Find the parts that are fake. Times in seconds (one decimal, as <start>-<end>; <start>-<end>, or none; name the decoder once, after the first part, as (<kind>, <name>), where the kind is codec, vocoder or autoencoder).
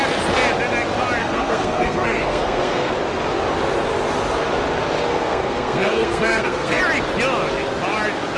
1.2-2.9 (codec, SNAC); 5.1-6.8